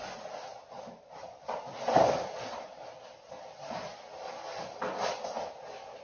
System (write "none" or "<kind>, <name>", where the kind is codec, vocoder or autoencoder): none